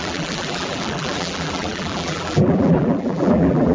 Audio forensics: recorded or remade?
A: remade